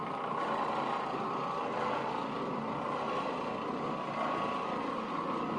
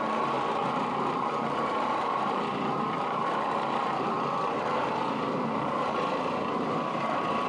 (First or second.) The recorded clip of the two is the first